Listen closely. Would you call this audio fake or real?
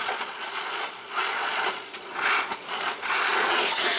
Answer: fake